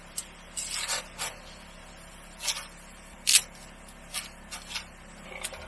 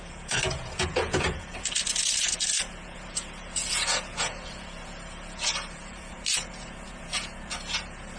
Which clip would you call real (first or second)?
first